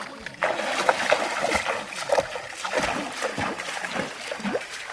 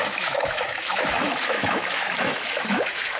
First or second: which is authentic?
first